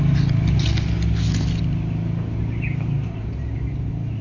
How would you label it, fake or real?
real